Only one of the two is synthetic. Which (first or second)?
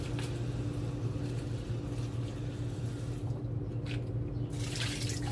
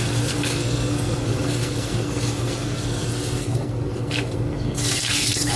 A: second